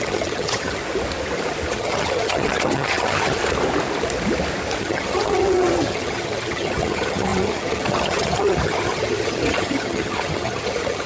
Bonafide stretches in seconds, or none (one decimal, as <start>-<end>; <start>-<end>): 0.8-1.7; 3.4-4.8